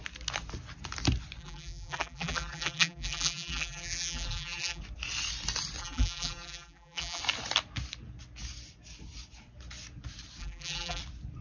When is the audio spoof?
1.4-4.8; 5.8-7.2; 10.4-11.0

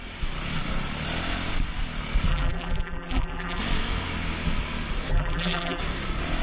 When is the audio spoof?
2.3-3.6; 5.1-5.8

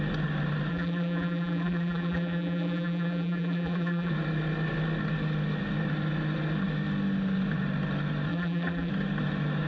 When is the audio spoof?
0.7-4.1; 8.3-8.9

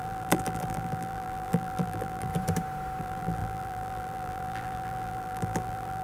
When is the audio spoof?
0.0-2.3; 3.0-6.0

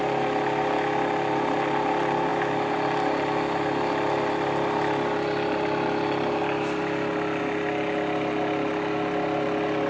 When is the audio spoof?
none

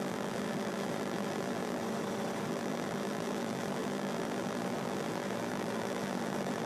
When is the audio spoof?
0.0-1.8; 2.5-6.7